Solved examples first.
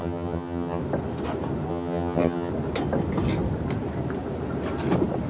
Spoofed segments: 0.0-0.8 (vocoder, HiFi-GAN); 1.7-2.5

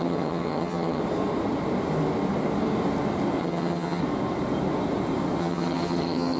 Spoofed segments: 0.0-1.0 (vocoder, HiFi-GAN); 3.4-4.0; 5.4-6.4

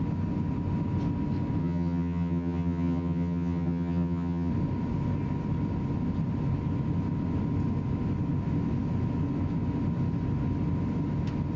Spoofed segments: 1.6-4.5 (vocoder, HiFi-GAN)

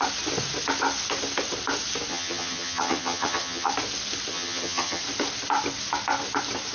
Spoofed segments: 2.1-3.7 (vocoder, HiFi-GAN); 4.3-5.0